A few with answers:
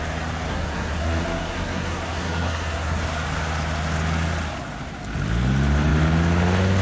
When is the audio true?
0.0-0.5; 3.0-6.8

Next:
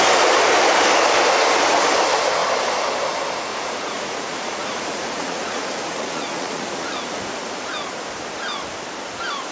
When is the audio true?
0.0-3.5; 7.7-9.5

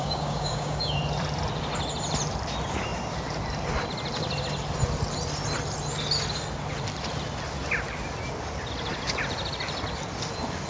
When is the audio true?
1.0-10.7

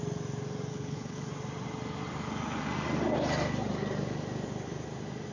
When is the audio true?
0.0-0.7; 1.3-5.3

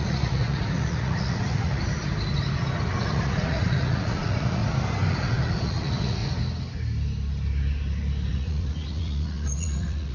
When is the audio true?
1.8-3.0; 4.6-5.1; 6.2-8.3

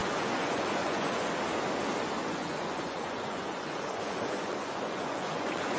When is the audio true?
1.3-2.2

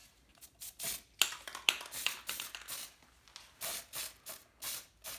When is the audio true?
0.0-5.2